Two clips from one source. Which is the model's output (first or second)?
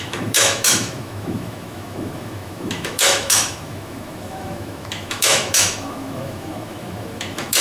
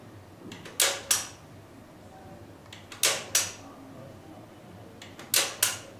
first